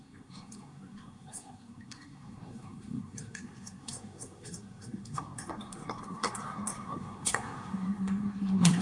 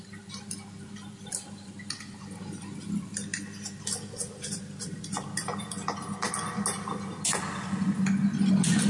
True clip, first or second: second